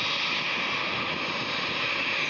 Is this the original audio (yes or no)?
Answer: yes